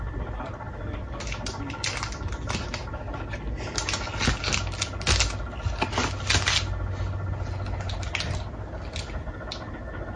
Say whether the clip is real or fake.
real